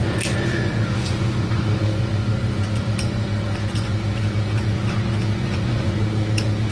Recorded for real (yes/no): no